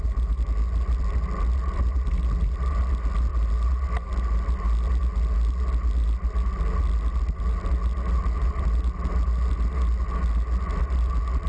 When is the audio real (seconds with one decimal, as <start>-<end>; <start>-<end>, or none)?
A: 0.0-11.5